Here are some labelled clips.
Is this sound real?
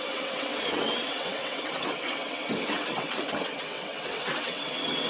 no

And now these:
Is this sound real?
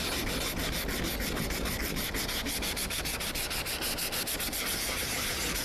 yes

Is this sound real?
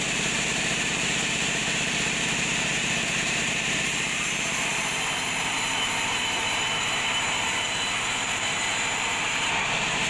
no